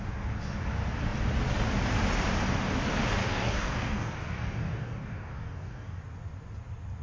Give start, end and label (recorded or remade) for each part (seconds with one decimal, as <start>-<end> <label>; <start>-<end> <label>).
0.0-3.2 recorded; 3.2-6.0 remade; 6.0-7.0 recorded